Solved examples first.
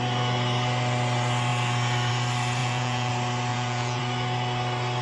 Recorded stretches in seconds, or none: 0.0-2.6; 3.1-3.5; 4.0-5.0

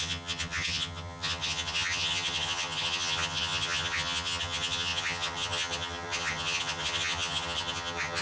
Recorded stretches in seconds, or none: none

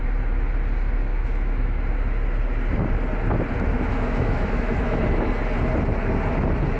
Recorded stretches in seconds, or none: 0.0-1.1; 1.8-3.7; 5.0-6.8

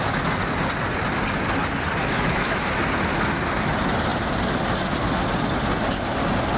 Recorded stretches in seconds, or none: 0.0-2.0; 2.8-6.6